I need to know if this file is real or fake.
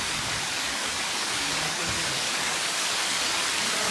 fake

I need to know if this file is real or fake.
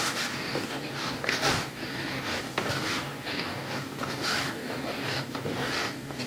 fake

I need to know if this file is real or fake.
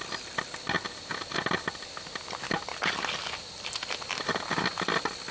real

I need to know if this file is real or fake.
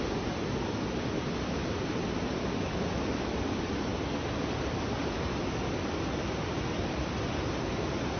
real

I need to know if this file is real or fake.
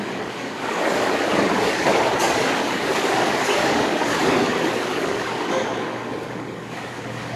fake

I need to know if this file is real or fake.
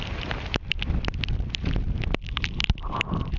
real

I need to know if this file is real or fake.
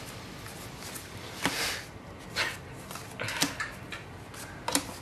real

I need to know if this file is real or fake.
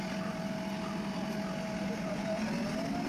real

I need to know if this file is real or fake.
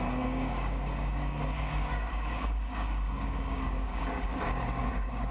fake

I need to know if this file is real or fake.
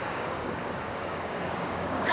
fake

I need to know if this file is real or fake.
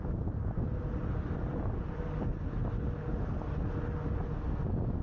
real